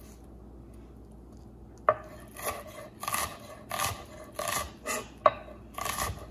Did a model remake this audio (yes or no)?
no